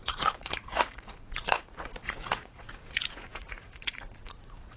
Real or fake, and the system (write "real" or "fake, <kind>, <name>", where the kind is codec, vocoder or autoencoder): fake, vocoder, Vocos